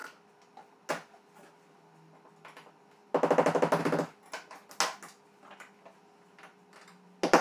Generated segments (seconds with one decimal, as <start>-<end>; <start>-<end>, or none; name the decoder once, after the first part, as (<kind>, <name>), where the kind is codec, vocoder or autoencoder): none